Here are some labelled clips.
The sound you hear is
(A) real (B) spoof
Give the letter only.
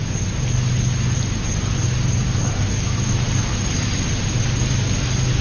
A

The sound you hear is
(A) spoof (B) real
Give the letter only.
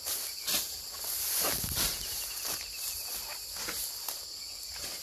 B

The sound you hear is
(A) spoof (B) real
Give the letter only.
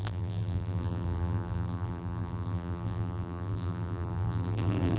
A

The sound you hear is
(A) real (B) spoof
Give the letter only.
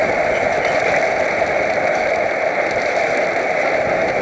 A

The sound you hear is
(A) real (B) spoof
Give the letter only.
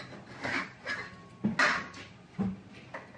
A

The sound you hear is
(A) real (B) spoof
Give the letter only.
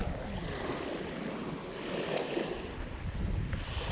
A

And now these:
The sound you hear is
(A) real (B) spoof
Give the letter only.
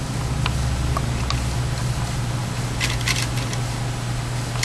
A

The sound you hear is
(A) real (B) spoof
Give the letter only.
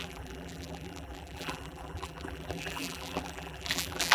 B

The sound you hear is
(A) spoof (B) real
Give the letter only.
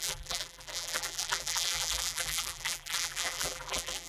A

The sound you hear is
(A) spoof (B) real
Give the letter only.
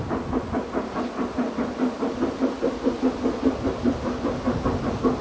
B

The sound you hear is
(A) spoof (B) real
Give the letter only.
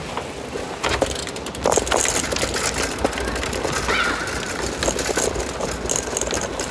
B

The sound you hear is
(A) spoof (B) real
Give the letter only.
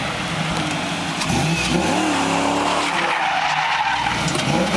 B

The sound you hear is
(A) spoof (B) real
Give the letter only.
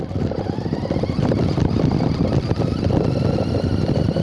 B